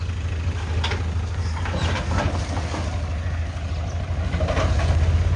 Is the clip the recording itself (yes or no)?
yes